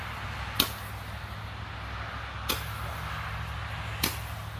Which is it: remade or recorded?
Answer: recorded